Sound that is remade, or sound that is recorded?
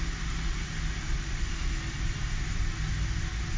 recorded